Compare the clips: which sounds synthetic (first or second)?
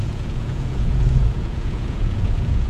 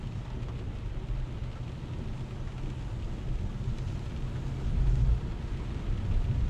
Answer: first